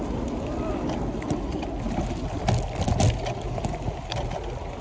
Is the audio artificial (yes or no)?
no